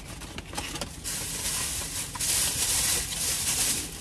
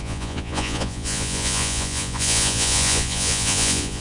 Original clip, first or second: first